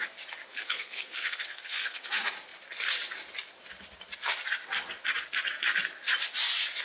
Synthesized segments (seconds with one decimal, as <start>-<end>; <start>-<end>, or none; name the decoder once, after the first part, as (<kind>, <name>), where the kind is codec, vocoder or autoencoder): 0.5-2.1 (codec, SNAC)